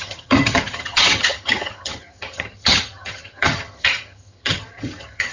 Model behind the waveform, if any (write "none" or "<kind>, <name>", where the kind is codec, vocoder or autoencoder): vocoder, HiFi-GAN